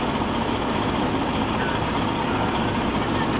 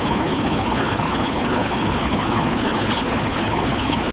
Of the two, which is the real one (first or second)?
first